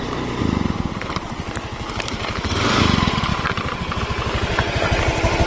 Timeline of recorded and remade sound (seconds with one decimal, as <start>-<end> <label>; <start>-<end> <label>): 0.0-5.5 remade